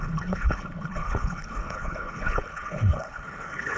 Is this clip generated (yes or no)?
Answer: yes